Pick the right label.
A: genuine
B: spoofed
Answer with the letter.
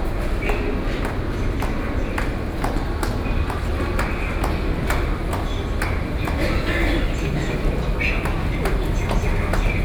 A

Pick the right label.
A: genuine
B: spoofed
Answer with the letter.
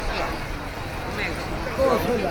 A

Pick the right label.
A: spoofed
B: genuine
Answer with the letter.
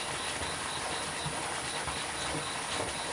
B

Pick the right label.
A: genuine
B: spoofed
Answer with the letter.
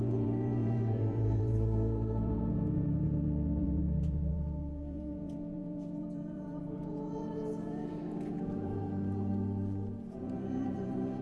B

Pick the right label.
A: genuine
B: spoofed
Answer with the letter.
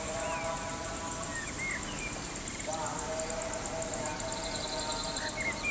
A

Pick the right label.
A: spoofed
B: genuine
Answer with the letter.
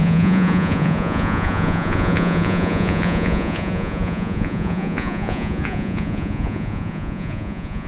A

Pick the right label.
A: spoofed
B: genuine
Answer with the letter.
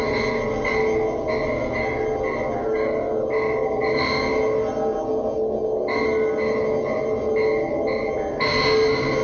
B